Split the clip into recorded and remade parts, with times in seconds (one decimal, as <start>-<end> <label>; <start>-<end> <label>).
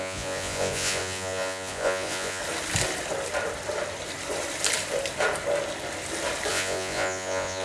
0.0-2.4 remade; 2.4-6.5 recorded; 6.5-7.6 remade